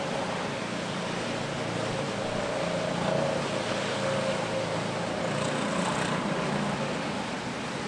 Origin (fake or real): real